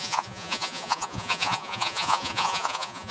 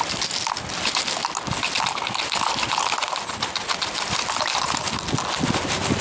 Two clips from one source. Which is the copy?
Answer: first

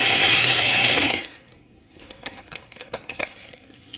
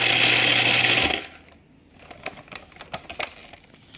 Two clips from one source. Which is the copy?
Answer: first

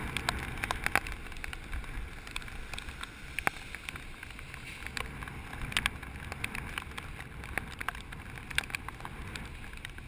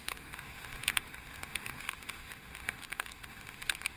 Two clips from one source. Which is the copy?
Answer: second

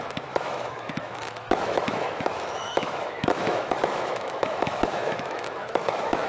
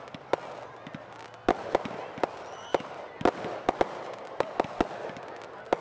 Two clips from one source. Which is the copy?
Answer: first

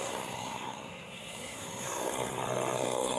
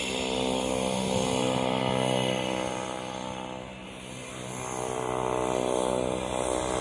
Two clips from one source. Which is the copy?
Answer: first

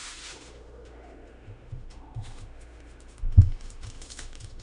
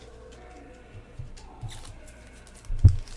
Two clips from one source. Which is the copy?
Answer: first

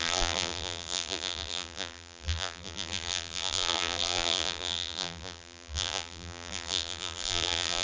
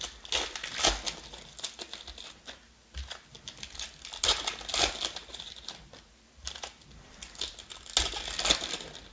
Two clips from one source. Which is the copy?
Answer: first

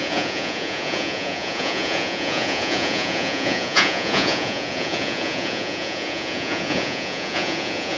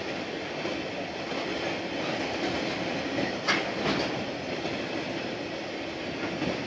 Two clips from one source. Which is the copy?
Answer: first